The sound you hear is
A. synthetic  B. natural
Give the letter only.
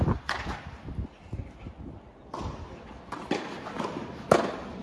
B